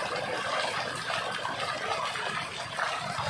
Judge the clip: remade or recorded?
recorded